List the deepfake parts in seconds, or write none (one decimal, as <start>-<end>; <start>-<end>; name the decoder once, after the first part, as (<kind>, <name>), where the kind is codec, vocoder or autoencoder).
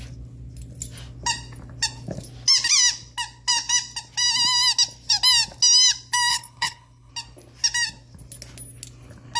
6.3-7.1 (codec, HILCodec)